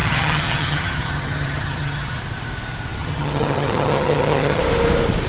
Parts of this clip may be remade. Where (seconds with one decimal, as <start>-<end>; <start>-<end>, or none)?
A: 0.0-2.2; 3.0-4.6